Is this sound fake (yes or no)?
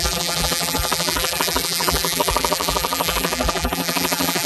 yes